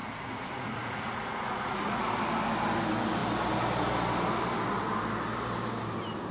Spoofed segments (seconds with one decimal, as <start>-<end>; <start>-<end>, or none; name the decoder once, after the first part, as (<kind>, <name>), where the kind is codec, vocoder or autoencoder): 0.0-2.0 (vocoder, Vocos)